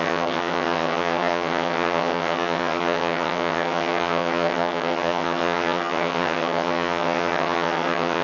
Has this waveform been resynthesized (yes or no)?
yes